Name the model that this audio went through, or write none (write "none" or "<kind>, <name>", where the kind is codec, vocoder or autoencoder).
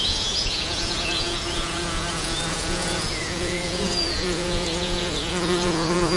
vocoder, Vocos